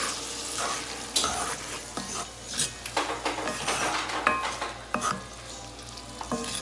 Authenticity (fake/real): real